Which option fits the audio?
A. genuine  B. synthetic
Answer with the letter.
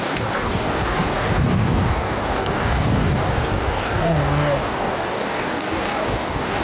B